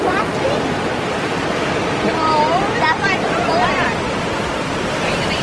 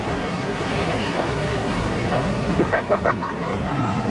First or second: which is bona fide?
first